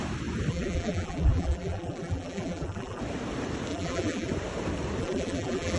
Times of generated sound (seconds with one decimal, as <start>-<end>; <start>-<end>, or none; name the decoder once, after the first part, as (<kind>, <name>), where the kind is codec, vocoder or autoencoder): 0.5-3.0 (vocoder, BigVGAN v2); 3.7-4.3; 5.0-5.8